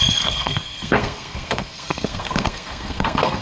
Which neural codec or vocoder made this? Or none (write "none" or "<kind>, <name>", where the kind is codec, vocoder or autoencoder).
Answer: codec, SNAC